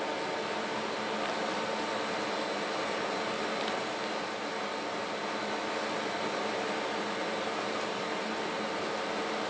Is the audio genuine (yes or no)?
yes